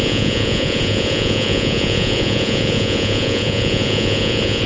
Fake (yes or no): yes